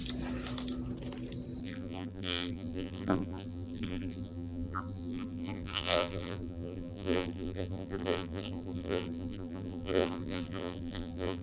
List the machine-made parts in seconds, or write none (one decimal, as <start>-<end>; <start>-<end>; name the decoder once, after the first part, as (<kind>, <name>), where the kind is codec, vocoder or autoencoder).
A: 1.6-11.4 (vocoder, BigVGAN v2)